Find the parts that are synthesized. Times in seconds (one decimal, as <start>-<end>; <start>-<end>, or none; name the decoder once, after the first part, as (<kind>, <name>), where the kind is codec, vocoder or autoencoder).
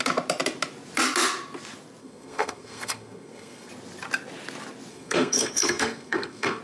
2.0-3.7 (codec, SNAC); 4.9-6.6